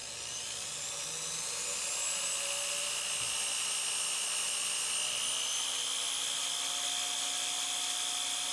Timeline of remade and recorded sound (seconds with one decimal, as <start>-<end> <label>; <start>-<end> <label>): 0.0-8.5 recorded